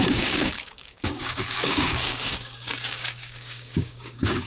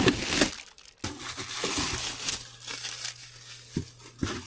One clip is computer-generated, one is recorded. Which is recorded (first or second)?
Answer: second